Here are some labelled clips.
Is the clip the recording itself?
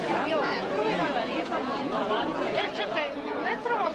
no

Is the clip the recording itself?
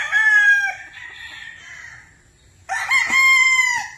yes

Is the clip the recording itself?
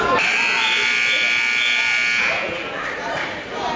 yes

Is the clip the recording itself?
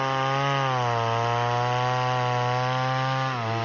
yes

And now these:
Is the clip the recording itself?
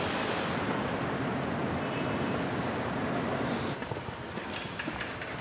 yes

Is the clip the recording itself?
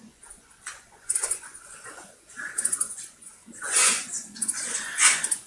no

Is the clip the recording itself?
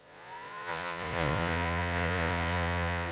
no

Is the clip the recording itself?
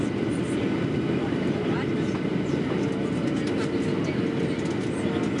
yes